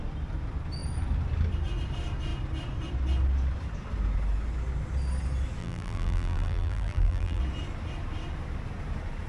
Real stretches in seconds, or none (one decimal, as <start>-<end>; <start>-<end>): 0.0-5.6; 7.4-9.3